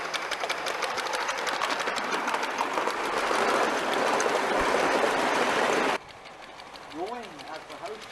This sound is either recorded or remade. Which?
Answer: recorded